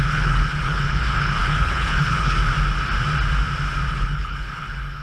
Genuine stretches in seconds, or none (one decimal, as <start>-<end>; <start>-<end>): 2.4-3.9